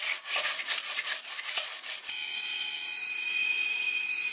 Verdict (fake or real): fake